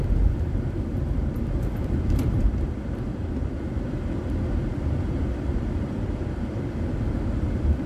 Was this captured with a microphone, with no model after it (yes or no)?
no